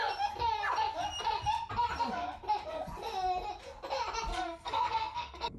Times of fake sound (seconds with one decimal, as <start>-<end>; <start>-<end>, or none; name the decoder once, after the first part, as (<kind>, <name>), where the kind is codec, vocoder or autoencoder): 4.3-5.6 (codec, SNAC)